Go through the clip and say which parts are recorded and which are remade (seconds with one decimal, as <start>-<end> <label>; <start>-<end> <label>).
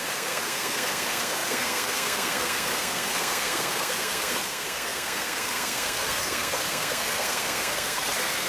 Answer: 0.0-8.5 remade